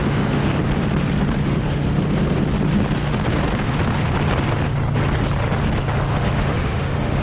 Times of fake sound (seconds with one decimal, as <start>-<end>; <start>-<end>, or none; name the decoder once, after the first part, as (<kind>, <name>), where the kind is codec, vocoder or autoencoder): 0.0-0.5 (autoencoder, DAC-VAE); 1.4-2.0; 6.0-7.2